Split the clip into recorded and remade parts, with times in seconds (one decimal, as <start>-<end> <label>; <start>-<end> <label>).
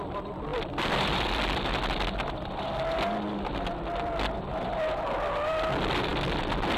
0.0-6.8 recorded